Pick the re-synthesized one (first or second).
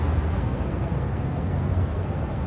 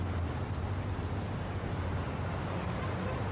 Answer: first